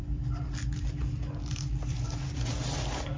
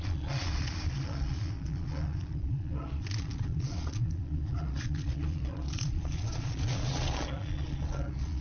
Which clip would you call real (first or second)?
first